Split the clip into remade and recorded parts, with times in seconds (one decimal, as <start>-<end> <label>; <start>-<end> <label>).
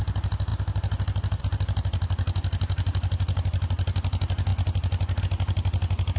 0.0-6.2 recorded